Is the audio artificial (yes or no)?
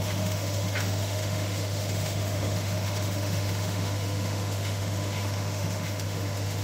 yes